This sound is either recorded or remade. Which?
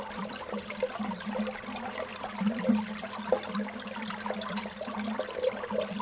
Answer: recorded